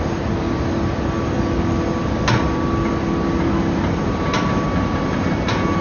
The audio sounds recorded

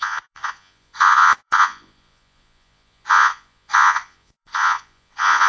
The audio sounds remade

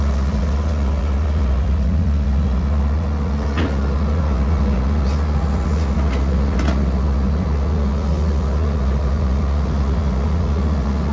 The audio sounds remade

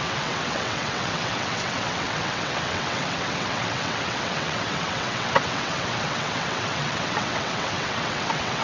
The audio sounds remade